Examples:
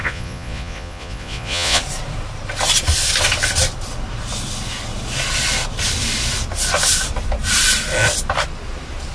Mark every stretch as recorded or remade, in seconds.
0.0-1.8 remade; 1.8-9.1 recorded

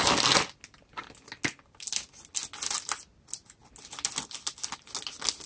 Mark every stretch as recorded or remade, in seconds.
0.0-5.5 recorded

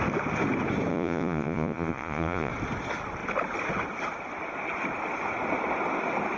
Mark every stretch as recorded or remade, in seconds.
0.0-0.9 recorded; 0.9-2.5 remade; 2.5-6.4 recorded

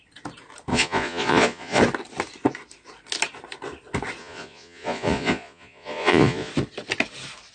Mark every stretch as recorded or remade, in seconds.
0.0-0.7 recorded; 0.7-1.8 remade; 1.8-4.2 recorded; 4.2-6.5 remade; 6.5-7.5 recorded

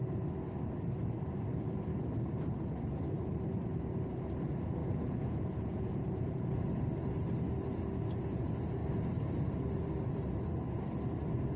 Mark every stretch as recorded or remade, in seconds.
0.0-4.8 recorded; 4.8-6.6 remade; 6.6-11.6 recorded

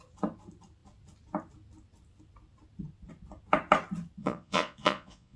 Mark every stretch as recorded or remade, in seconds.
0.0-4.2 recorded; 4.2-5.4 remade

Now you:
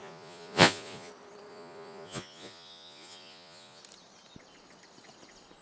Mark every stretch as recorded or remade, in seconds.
0.0-1.1 remade; 1.1-1.5 recorded; 1.5-3.8 remade; 3.8-5.6 recorded

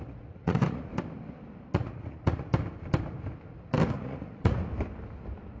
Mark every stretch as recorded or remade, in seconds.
0.0-0.9 remade; 0.9-1.7 recorded; 1.7-2.5 remade; 2.5-3.9 recorded; 3.9-4.7 remade; 4.7-5.6 recorded